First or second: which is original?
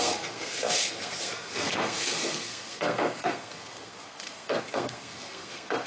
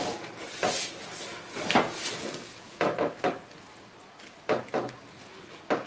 second